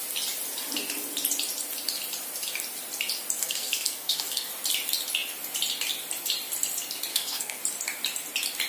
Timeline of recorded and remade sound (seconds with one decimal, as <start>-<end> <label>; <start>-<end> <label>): 0.0-3.4 recorded; 3.4-4.5 remade; 4.5-7.1 recorded; 7.1-7.6 remade; 7.6-8.7 recorded